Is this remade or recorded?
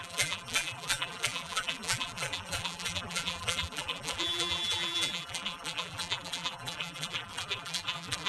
remade